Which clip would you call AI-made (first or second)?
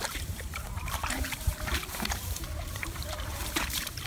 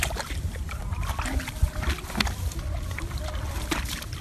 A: first